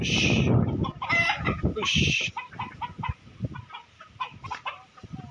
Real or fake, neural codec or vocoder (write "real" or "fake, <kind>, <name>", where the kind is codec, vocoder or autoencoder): fake, vocoder, BigVGAN v2